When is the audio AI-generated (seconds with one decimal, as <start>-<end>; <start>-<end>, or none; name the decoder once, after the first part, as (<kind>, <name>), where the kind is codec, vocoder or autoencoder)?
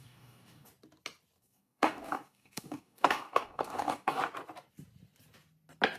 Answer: 0.0-0.7 (codec, DAC); 1.4-4.2